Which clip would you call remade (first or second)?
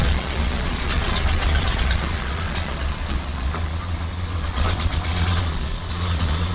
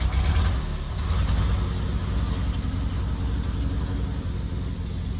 first